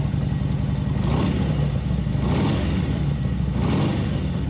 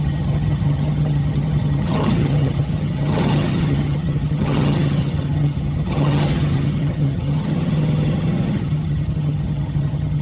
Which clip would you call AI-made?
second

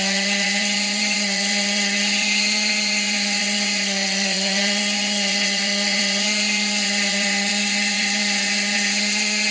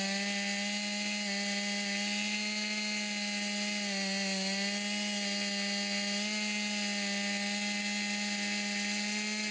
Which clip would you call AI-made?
first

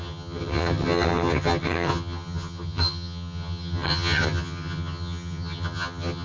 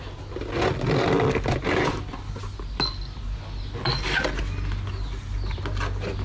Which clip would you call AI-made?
first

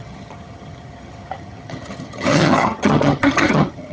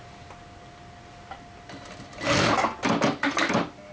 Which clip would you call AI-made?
first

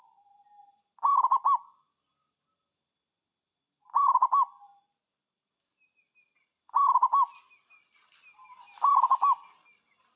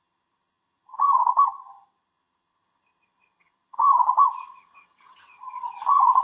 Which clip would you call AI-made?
second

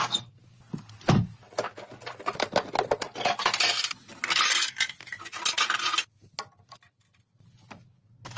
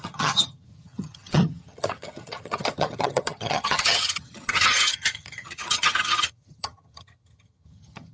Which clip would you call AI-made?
second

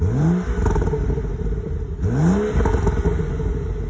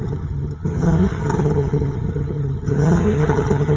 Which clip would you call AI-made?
second